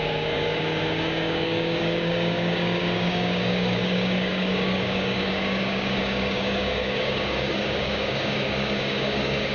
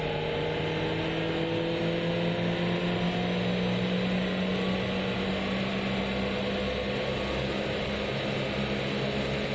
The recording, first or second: second